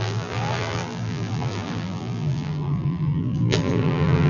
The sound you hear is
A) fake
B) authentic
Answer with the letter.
A